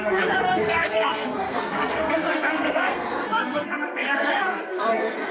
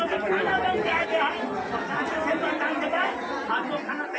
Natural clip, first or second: second